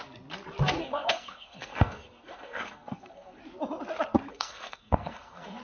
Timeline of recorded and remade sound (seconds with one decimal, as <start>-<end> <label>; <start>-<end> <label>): 0.0-0.8 recorded; 0.8-3.4 remade; 3.4-4.3 recorded; 4.3-5.6 remade